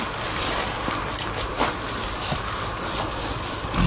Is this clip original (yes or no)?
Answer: yes